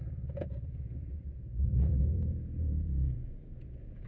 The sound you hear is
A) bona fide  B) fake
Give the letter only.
B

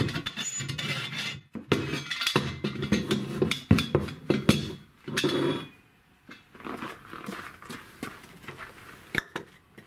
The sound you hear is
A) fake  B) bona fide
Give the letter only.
B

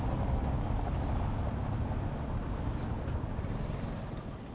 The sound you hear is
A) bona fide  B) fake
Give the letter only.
A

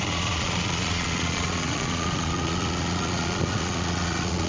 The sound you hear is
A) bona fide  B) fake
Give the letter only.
B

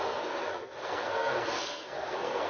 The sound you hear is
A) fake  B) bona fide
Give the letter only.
A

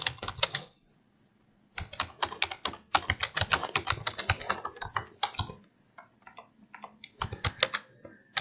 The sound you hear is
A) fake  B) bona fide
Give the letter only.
B